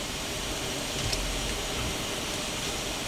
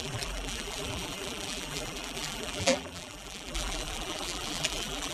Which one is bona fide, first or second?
first